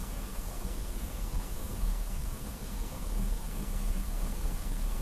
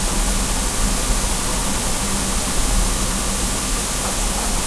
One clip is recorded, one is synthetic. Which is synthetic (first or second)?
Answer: first